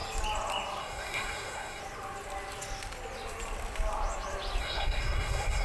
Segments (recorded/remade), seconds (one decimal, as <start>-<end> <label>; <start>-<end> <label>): 0.0-0.8 recorded; 0.8-1.8 remade; 1.8-4.6 recorded; 4.6-5.6 remade